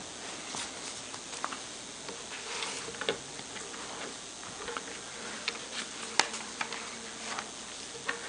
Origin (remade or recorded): recorded